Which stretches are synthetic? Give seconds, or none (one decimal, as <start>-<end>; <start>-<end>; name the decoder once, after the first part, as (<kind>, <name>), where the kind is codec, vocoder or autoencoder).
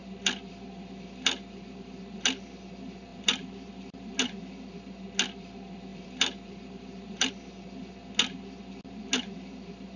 0.0-2.0 (vocoder, BigVGAN v2); 3.1-4.1; 5.9-7.3